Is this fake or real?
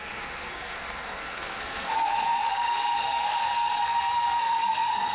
fake